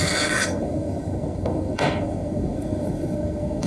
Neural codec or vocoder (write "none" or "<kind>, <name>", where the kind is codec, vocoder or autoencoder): codec, SNAC